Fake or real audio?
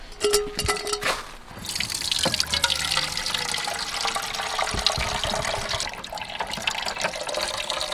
real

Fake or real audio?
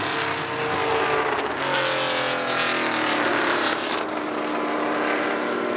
real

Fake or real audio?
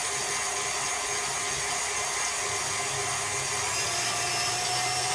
real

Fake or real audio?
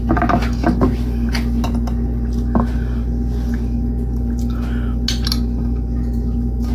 real